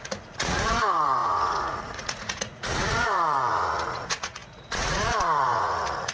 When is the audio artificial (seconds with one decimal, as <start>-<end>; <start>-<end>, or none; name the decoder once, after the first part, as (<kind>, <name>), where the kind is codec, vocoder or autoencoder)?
0.0-6.1 (vocoder, Vocos)